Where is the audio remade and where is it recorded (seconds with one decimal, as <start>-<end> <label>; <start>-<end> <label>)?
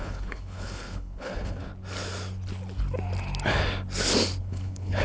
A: 0.0-1.7 remade; 1.7-4.4 recorded; 4.4-5.0 remade